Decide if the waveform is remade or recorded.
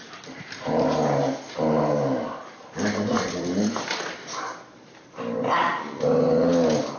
recorded